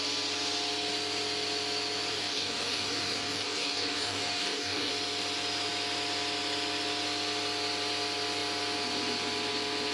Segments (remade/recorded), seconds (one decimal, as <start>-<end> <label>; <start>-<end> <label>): 0.0-2.1 recorded; 2.1-4.9 remade; 4.9-9.9 recorded